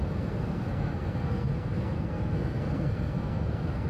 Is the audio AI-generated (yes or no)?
yes